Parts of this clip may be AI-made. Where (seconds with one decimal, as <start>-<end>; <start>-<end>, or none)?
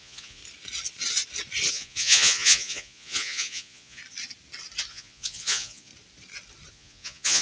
0.0-0.4; 1.7-4.0; 4.9-5.9; 6.7-7.4